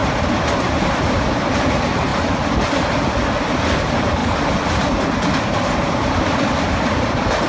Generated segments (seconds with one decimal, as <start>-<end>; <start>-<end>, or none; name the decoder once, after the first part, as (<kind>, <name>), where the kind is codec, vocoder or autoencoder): 0.0-1.5 (vocoder, BigVGAN v2); 4.2-7.5